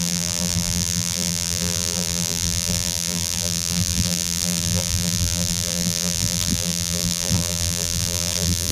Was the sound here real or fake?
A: fake